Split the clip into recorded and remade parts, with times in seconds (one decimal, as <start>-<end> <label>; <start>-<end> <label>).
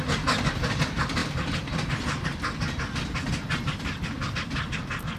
0.0-5.2 recorded